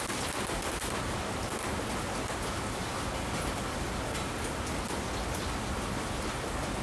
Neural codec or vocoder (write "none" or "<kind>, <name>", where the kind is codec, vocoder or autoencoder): none